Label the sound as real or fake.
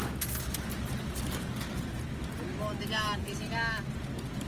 real